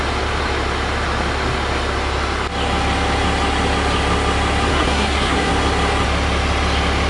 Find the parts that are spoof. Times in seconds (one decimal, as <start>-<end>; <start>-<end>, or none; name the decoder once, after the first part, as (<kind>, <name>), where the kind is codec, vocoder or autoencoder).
4.7-5.5 (codec, SNAC)